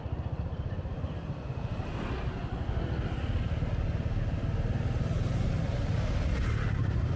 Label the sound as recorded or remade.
recorded